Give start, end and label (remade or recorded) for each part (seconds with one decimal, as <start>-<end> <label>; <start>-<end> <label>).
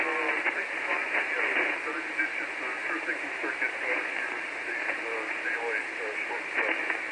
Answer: 0.0-7.1 recorded